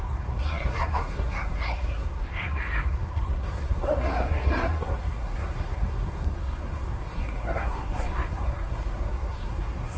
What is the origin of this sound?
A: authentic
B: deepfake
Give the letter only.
B